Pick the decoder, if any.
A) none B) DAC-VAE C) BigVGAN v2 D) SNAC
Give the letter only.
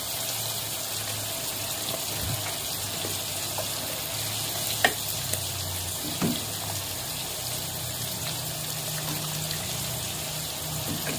A